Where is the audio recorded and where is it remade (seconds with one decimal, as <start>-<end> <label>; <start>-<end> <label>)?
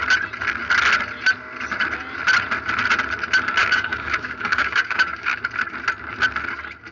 0.0-3.6 recorded; 3.6-5.4 remade; 5.4-6.9 recorded